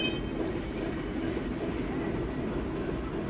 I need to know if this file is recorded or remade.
recorded